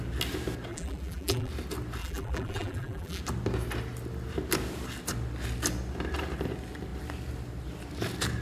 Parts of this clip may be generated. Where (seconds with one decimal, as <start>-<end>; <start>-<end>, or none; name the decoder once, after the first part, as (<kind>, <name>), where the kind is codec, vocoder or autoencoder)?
0.7-1.5 (vocoder, BigVGAN v2); 2.0-3.2